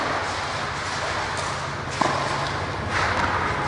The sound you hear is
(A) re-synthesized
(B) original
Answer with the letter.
B